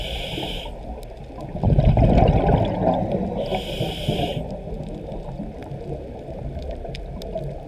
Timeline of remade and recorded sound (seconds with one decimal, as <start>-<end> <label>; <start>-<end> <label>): 0.0-7.7 recorded